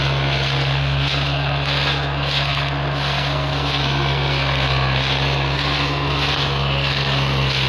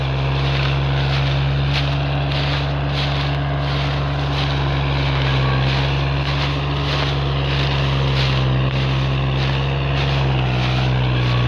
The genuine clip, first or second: second